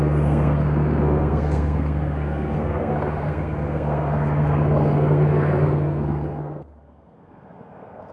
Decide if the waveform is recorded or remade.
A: remade